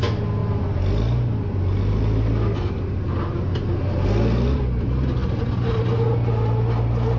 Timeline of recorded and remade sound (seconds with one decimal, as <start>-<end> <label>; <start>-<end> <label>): 0.0-7.2 recorded